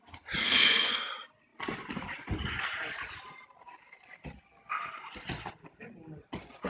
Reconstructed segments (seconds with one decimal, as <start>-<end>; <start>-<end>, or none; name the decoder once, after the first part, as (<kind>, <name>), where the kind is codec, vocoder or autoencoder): 0.4-1.1 (codec, SNAC)